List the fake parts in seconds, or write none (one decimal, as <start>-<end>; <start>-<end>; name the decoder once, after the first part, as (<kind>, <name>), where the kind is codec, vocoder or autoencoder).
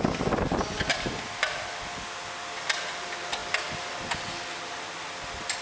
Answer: none